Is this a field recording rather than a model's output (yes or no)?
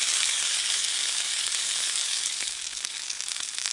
no